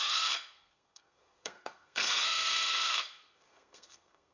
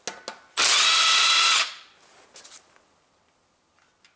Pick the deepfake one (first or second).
first